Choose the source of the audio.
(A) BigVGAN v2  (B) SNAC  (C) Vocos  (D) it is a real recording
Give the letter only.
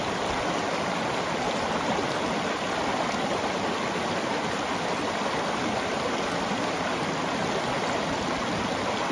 D